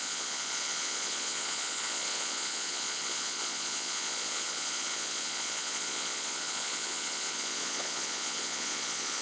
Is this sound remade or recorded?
remade